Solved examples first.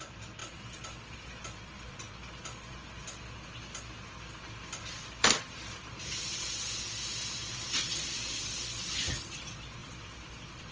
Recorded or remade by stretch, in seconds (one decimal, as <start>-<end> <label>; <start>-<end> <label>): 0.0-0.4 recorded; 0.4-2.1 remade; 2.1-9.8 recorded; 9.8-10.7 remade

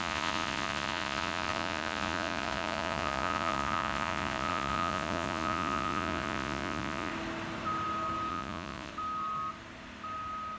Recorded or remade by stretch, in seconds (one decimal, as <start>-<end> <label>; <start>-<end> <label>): 0.0-7.1 remade; 7.1-8.3 recorded; 8.3-8.9 remade; 8.9-10.6 recorded

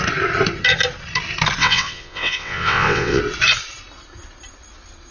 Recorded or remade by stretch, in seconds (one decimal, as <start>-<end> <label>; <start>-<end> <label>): 0.0-1.6 recorded; 1.6-3.2 remade; 3.2-5.1 recorded

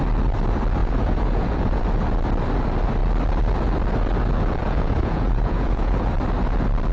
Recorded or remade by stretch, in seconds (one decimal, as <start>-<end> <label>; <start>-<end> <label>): 0.0-0.8 recorded; 0.8-1.8 remade; 1.8-4.6 recorded; 4.6-6.1 remade; 6.1-6.9 recorded